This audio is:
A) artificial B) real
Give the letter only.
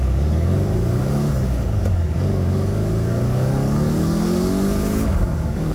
A